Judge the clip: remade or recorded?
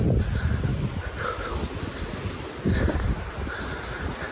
recorded